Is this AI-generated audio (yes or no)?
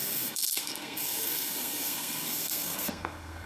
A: yes